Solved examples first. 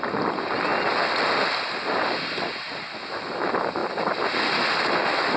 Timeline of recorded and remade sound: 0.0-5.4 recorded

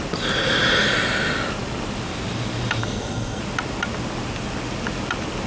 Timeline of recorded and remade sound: 0.0-2.8 recorded; 2.8-3.4 remade; 3.4-5.5 recorded